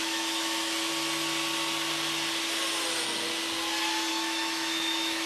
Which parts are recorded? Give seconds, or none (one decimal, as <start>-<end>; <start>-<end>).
0.9-4.1